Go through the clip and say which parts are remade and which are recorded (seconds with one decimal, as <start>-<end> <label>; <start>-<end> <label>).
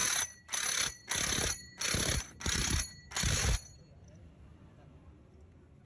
0.0-5.9 recorded